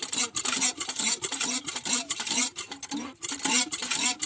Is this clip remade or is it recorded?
recorded